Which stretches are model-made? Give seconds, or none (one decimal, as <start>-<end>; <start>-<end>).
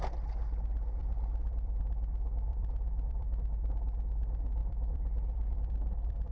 1.0-1.8; 2.5-3.5; 4.6-6.3